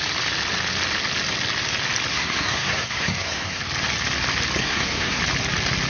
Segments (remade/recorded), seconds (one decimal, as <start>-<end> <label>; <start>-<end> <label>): 0.0-2.1 recorded; 2.1-3.6 remade; 3.6-4.6 recorded; 4.6-5.2 remade; 5.2-5.9 recorded